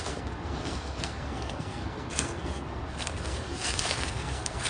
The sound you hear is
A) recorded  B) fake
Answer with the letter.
B